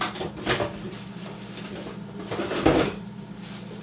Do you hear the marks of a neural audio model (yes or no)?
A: no